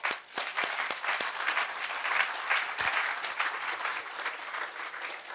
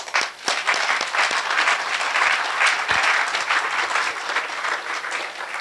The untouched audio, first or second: second